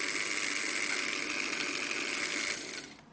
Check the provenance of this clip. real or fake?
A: real